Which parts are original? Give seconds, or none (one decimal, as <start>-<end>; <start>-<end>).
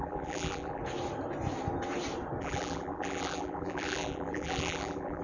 0.8-2.4